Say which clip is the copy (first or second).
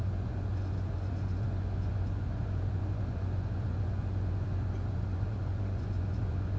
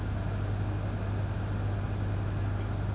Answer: first